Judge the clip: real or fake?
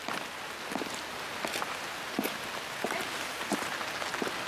real